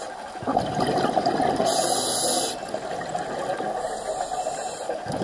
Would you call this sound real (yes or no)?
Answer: yes